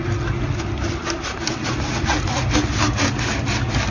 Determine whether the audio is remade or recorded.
recorded